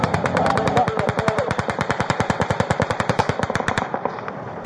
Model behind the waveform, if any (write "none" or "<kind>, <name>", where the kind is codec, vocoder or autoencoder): vocoder, BigVGAN v2